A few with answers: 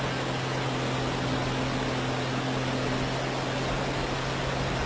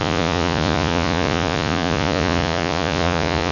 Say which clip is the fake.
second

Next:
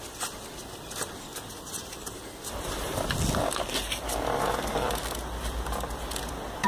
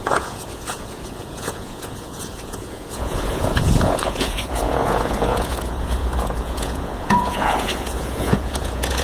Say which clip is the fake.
second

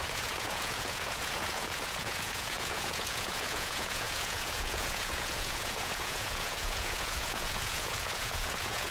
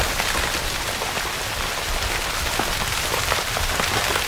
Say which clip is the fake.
first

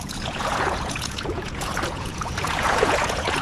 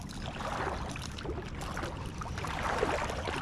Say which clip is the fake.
first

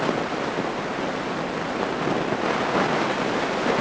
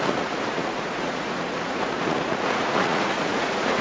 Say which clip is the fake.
second